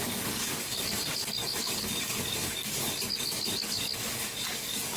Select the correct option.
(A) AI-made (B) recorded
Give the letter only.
A